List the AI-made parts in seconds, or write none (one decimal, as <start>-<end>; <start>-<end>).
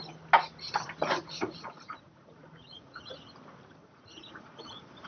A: 1.0-3.1; 3.8-5.1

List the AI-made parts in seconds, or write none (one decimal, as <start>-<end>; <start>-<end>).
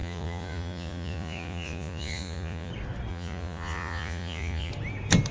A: 0.0-2.7; 3.1-4.7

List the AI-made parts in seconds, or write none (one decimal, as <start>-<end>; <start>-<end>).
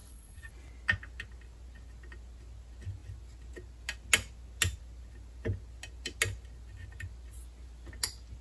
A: 0.0-0.5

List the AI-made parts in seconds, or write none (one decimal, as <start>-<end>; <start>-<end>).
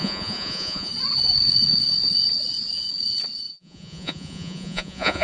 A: 0.0-0.9; 3.5-5.2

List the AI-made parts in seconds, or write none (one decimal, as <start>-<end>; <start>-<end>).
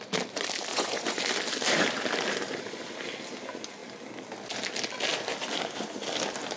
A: 0.7-1.2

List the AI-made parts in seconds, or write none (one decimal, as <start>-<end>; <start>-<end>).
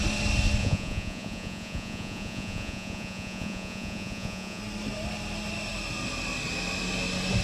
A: 0.6-4.6